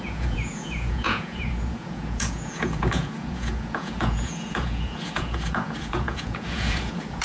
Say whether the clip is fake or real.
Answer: fake